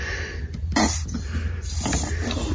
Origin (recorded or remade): recorded